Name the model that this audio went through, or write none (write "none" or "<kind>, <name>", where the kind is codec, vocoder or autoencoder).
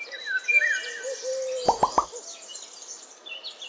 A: vocoder, BigVGAN v2